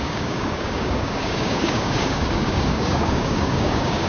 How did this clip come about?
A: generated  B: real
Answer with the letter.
A